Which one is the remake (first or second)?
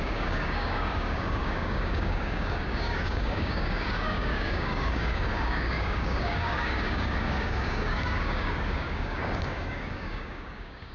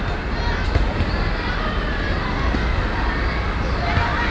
first